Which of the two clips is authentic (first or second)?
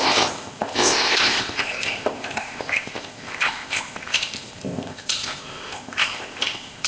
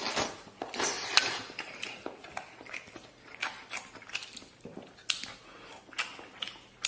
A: second